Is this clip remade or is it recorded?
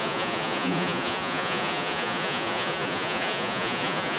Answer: remade